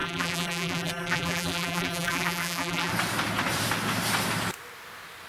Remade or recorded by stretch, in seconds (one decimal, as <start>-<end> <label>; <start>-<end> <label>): 0.0-2.9 remade; 2.9-5.3 recorded